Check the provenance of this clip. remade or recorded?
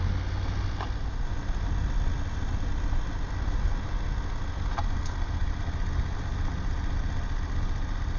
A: recorded